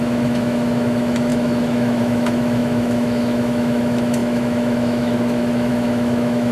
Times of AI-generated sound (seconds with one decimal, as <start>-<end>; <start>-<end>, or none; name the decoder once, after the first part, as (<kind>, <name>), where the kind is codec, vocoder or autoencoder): 0.0-6.5 (autoencoder, DAC-VAE)